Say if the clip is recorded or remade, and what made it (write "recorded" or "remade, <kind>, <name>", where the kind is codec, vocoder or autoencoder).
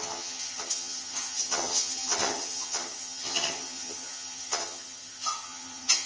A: remade, vocoder, HiFi-GAN